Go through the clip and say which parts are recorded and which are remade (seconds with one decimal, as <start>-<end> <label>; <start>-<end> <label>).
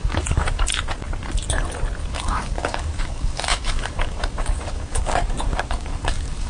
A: 0.0-0.7 remade; 0.7-2.0 recorded; 2.0-6.5 remade